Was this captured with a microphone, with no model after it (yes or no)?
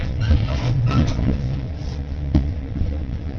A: no